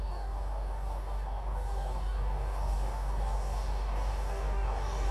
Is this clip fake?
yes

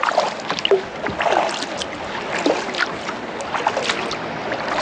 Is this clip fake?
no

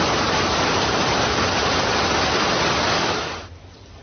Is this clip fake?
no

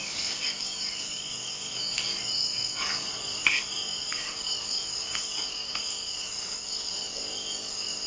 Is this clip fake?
yes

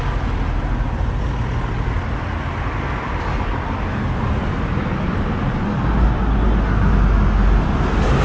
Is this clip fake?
no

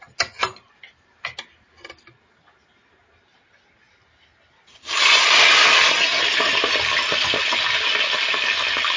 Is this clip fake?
no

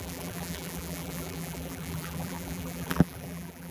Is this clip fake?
yes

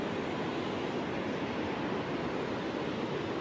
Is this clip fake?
no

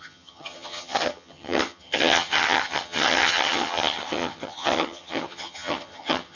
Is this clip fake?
yes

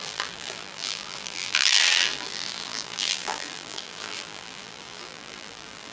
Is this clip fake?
yes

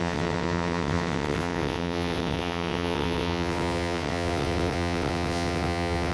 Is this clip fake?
yes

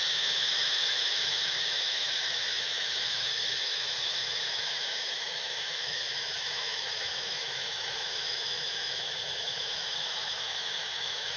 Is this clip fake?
yes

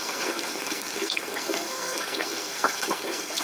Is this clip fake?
yes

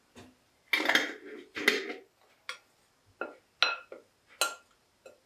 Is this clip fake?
no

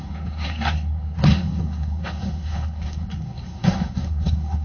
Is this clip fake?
yes